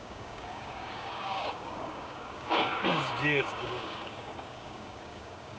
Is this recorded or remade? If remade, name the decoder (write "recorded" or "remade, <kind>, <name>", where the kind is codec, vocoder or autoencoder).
remade, codec, DAC